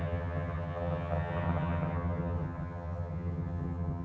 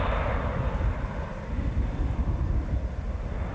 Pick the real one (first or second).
second